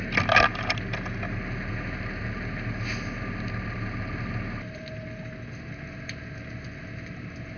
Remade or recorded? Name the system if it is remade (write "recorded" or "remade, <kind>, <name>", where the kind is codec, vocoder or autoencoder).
recorded